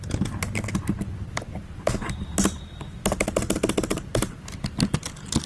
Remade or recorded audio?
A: recorded